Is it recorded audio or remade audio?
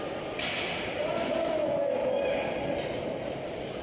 recorded